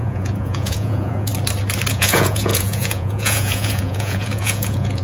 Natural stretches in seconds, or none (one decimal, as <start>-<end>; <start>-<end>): 1.3-1.9